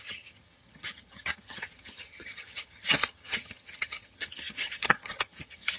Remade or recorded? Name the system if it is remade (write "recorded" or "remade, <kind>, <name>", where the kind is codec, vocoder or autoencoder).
remade, vocoder, HiFi-GAN